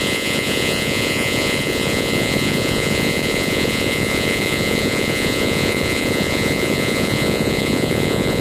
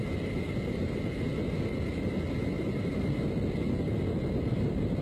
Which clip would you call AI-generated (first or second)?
first